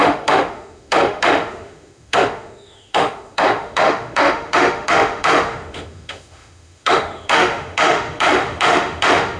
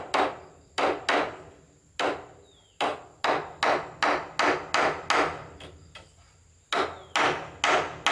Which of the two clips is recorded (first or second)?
second